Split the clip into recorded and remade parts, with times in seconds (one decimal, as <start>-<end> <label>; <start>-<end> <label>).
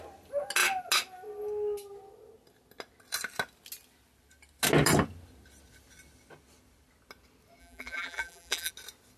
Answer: 0.0-7.6 recorded; 7.6-8.7 remade; 8.7-9.2 recorded